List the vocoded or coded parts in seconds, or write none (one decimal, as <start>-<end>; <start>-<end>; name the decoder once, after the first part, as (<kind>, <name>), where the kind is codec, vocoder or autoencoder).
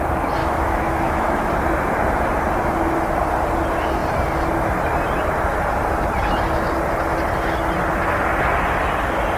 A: 0.4-1.5 (autoencoder, DAC-VAE)